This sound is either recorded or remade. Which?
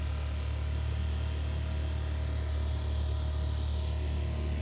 recorded